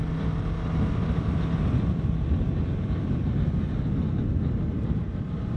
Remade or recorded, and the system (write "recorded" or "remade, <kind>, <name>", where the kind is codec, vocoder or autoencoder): recorded